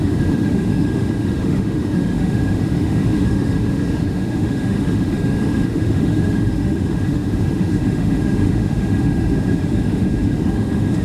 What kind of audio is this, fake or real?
fake